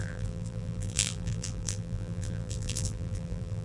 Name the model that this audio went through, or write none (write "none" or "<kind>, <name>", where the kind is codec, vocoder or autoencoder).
vocoder, BigVGAN v2